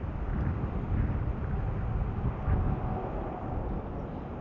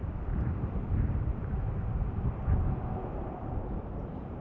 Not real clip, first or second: second